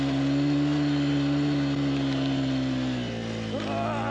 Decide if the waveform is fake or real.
real